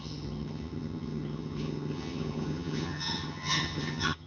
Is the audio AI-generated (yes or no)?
yes